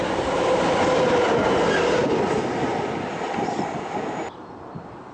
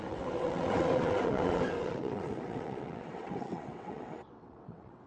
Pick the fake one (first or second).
second